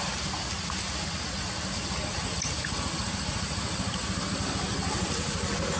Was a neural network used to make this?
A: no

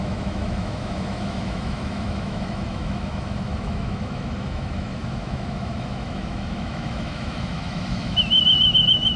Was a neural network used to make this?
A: yes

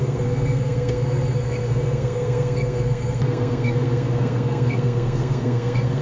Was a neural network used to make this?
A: yes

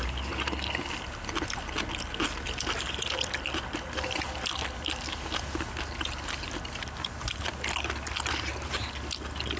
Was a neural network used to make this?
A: no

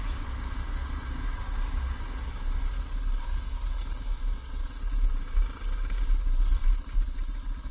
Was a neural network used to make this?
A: no